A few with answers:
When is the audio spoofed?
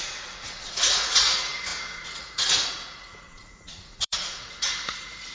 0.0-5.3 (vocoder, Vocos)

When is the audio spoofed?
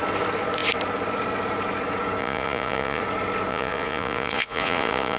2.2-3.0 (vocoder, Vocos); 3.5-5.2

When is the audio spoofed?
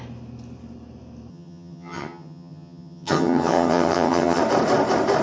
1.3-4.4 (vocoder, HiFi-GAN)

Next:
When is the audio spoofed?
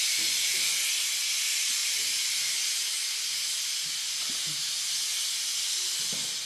none